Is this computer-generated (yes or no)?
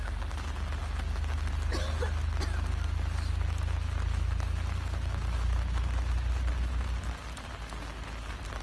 no